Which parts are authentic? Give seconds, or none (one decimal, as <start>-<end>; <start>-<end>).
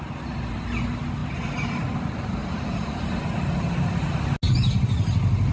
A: 0.0-5.5